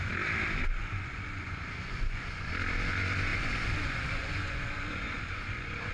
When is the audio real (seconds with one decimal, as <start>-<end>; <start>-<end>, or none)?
0.0-0.8; 2.4-3.3